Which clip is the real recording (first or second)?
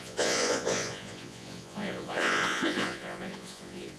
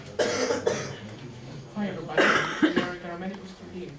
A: second